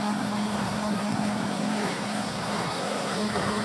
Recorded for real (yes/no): no